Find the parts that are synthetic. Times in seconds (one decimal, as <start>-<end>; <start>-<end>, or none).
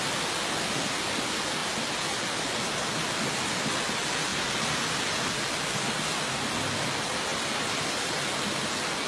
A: none